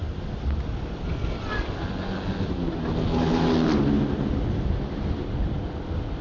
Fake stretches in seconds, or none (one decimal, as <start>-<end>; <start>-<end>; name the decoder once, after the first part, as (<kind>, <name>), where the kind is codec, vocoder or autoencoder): none